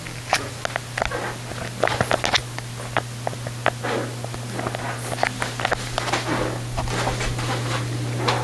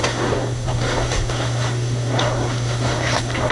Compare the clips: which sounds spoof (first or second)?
second